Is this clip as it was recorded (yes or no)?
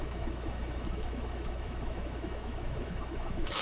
no